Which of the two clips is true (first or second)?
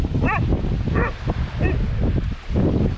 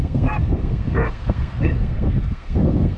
first